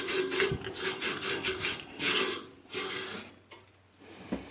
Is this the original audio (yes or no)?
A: yes